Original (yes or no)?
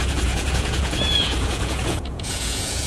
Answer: no